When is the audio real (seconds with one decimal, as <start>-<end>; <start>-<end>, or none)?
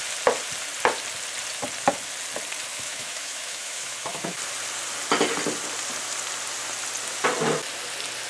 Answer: 0.0-2.7; 4.4-8.3